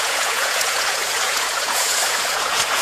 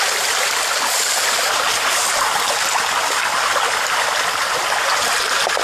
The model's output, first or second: first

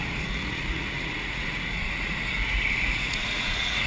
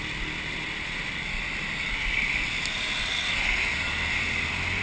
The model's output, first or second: first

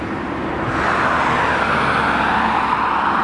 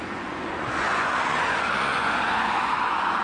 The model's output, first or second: second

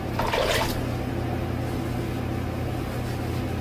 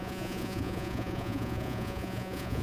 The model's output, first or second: second